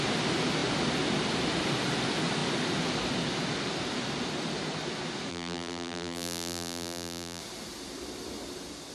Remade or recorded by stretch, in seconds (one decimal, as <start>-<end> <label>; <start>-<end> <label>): 0.0-5.3 recorded; 5.3-7.4 remade; 7.4-8.9 recorded